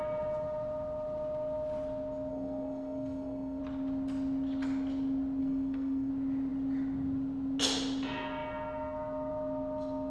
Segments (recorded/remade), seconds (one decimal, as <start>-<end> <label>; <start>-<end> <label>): 0.0-2.3 recorded; 2.3-3.6 remade; 3.6-5.4 recorded; 5.4-6.1 remade; 6.1-10.1 recorded